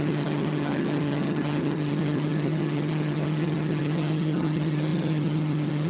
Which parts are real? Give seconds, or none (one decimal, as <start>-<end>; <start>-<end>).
none